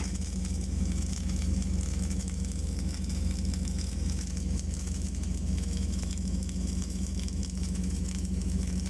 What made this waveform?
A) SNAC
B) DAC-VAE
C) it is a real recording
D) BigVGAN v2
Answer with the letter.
B